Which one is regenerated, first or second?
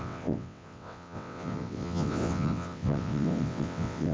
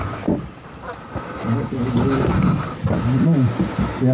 first